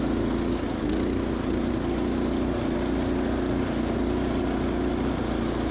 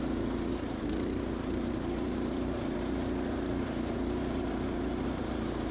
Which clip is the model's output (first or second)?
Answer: second